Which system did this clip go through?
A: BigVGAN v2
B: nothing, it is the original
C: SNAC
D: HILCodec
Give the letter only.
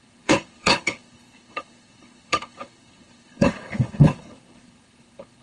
D